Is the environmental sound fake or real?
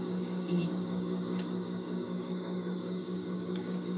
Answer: fake